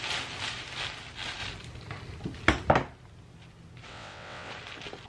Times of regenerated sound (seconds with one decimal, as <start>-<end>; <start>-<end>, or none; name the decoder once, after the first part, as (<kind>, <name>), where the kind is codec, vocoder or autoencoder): 3.9-4.5 (vocoder, WaveNeXt)